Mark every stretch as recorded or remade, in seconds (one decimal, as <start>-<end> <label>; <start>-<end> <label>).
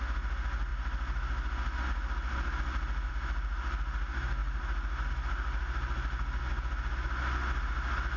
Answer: 0.0-8.2 recorded